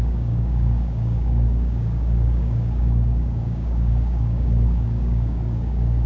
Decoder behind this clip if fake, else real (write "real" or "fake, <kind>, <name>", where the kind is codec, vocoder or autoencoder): fake, codec, DAC